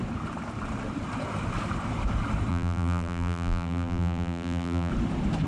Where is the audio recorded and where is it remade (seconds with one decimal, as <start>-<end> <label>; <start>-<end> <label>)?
0.0-2.5 recorded; 2.5-4.9 remade; 4.9-5.5 recorded

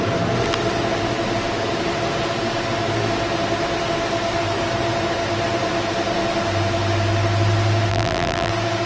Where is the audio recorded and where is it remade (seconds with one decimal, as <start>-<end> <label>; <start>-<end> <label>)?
0.0-7.9 recorded; 7.9-8.5 remade; 8.5-8.9 recorded

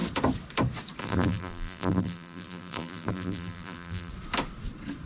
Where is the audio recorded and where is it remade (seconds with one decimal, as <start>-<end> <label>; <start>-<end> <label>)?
0.0-1.0 recorded; 1.0-4.1 remade; 4.1-5.1 recorded

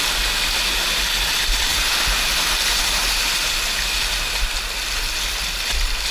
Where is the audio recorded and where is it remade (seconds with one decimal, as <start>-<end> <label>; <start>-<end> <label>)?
0.0-6.1 recorded

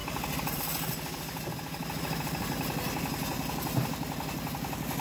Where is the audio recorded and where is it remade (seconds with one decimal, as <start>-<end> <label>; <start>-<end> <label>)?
0.0-5.0 recorded

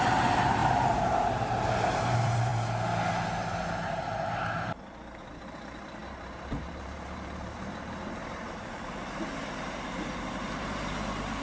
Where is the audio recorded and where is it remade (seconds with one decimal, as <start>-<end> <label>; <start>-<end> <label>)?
0.0-2.5 remade; 2.5-5.2 recorded; 5.2-11.4 remade

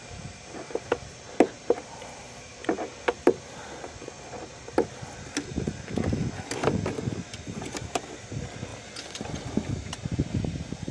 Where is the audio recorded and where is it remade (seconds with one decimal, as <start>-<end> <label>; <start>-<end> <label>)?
0.0-2.6 remade; 2.6-7.6 recorded; 7.6-8.7 remade; 8.7-9.7 recorded; 9.7-10.9 remade

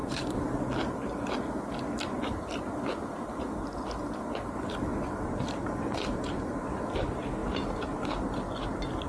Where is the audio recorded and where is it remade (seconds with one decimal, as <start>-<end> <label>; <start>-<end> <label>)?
0.0-0.6 remade; 0.6-4.9 recorded; 4.9-6.8 remade; 6.8-7.4 recorded; 7.4-8.2 remade; 8.2-9.1 recorded